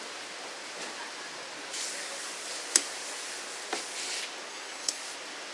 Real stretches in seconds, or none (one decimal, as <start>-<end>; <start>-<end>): 0.0-4.5; 5.0-5.5